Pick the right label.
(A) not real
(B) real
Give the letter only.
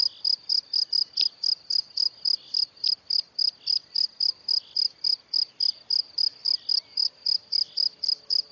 B